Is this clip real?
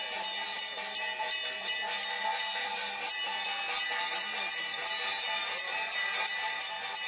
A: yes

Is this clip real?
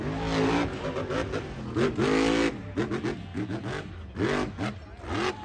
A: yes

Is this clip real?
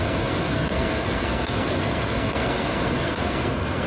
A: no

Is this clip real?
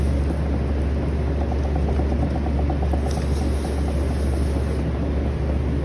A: yes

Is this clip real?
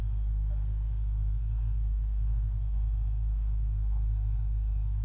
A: no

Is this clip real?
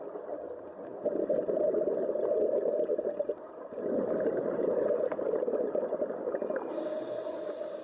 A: yes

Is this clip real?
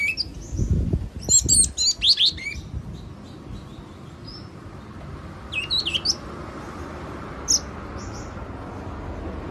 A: yes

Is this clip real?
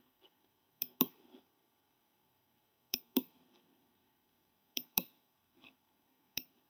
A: no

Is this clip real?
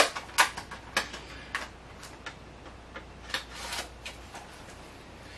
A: yes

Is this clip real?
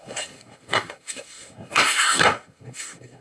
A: no